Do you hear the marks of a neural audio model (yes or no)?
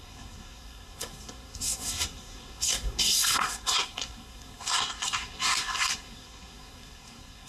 yes